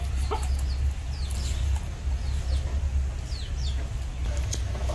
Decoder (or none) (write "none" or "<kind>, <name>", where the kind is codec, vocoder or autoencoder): none